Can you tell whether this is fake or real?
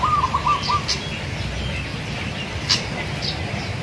real